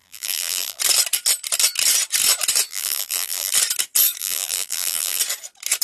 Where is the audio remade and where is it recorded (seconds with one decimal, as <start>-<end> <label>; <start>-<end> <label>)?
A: 0.0-0.8 remade; 0.8-2.7 recorded; 2.7-3.5 remade; 3.5-4.2 recorded; 4.2-5.2 remade; 5.2-5.8 recorded